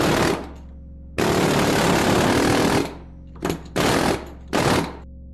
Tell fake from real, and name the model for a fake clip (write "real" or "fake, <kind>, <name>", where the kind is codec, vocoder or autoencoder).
real